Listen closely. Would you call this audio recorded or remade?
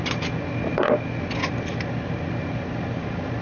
recorded